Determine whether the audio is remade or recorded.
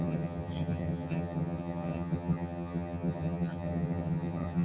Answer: remade